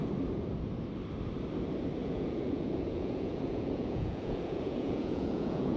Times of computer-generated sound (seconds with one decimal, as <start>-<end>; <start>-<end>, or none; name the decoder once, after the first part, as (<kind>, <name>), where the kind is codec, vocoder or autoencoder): 2.0-5.8 (vocoder, Vocos)